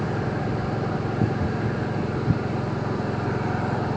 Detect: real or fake real